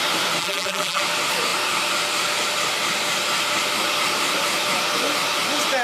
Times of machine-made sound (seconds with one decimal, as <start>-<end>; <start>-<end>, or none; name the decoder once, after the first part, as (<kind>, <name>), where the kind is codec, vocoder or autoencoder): 0.4-1.0 (vocoder, BigVGAN v2)